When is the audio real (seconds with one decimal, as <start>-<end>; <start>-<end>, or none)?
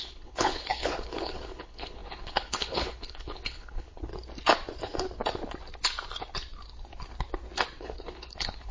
4.1-7.8